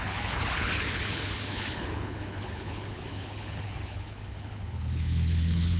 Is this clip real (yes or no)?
no